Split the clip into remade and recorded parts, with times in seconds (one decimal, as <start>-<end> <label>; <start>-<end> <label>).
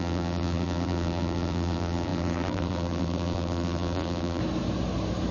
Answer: 0.0-4.4 remade; 4.4-5.3 recorded